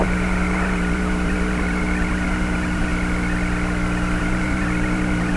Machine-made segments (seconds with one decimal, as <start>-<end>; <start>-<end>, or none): 0.0-2.9; 4.2-5.4